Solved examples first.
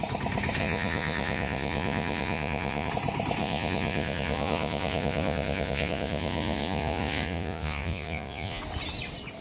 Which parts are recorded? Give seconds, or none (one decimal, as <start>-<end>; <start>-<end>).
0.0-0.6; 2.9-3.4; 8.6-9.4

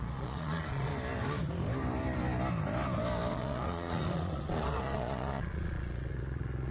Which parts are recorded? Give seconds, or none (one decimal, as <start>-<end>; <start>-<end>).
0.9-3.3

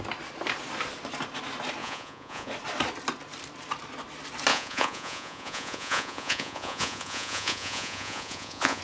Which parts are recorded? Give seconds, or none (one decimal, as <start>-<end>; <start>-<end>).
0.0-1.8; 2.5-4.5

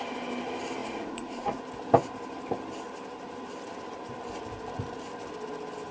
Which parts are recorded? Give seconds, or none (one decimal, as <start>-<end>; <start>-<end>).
0.0-0.8; 1.6-5.9